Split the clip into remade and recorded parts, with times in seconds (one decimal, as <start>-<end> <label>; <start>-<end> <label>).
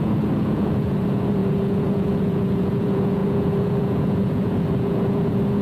0.0-5.6 remade